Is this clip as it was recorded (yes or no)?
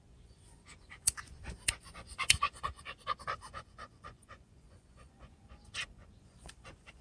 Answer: no